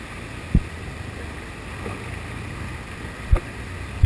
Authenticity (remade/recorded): recorded